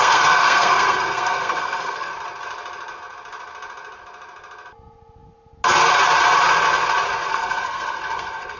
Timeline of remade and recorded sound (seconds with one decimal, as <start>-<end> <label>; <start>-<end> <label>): 0.0-2.1 remade; 2.1-7.3 recorded; 7.3-8.6 remade